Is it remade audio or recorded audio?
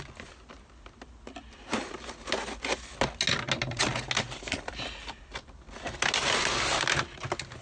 recorded